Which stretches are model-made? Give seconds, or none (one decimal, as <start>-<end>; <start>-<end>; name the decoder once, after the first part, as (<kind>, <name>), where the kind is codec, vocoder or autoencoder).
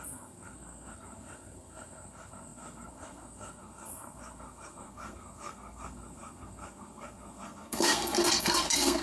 0.0-9.0 (codec, SNAC)